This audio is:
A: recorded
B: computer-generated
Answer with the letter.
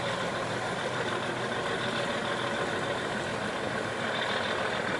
A